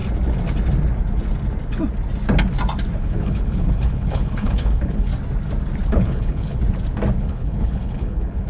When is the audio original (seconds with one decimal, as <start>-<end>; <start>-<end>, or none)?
0.0-3.0; 5.1-5.9; 6.6-7.2